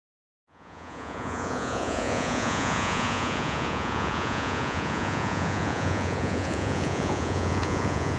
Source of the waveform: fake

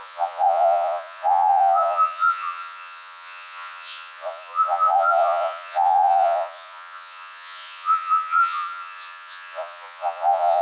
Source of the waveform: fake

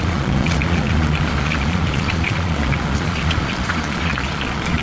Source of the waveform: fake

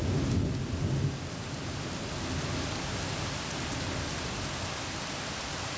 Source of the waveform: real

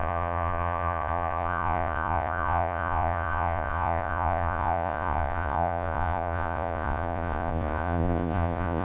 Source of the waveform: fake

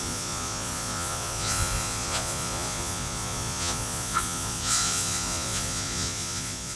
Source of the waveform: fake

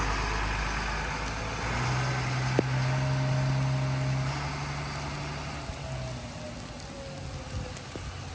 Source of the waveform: real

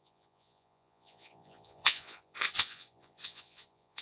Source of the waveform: fake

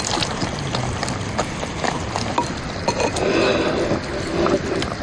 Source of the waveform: real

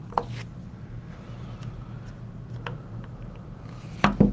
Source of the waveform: real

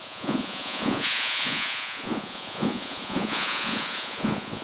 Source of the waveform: fake